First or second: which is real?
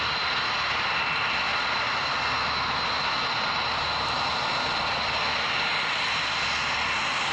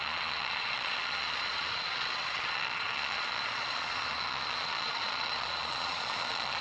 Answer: first